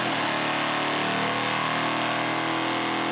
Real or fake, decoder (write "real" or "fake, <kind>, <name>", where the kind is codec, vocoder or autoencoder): real